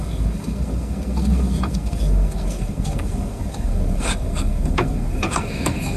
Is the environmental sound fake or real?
fake